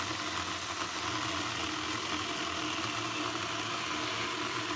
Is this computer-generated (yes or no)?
no